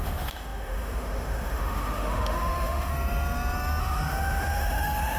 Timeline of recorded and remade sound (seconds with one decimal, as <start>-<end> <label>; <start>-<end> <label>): 0.0-2.9 remade; 2.9-3.8 recorded; 3.8-5.2 remade